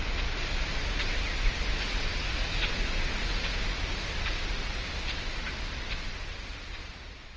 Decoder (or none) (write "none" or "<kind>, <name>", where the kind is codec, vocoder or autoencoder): none